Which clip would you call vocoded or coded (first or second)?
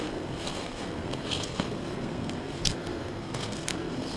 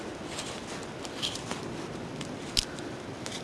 first